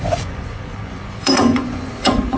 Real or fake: fake